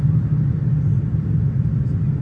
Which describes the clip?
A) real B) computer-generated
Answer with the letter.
A